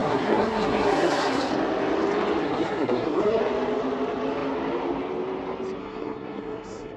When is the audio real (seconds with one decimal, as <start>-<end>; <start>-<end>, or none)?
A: 1.5-2.4; 3.4-5.8